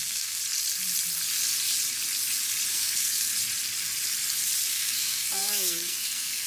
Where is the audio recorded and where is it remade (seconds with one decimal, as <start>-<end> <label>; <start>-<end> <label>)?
0.0-0.4 remade; 0.4-2.7 recorded; 2.7-3.3 remade; 3.3-4.7 recorded; 4.7-6.5 remade